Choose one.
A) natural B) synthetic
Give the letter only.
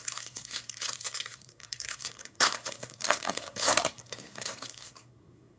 B